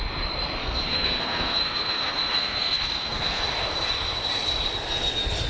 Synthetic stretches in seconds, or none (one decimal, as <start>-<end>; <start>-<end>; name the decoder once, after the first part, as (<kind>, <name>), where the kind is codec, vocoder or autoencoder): 0.6-3.4 (codec, SNAC)